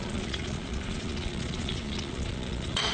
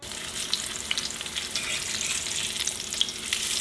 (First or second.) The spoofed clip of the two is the first